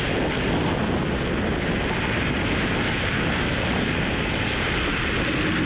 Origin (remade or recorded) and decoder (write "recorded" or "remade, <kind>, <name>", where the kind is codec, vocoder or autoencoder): recorded